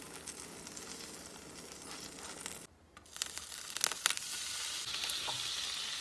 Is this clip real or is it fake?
real